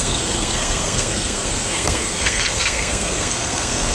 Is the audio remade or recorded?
remade